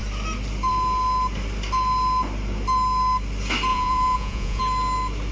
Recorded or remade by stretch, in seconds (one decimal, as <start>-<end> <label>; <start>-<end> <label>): 0.0-3.7 recorded; 3.7-4.6 remade; 4.6-5.3 recorded